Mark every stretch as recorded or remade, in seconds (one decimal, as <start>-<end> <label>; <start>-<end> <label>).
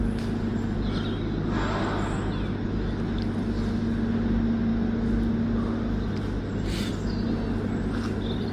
0.0-8.5 recorded